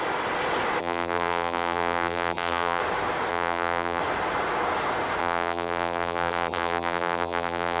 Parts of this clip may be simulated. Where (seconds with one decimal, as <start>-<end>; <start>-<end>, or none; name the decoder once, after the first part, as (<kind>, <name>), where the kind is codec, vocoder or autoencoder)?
0.8-2.8 (vocoder, BigVGAN v2); 3.3-4.0; 5.2-7.8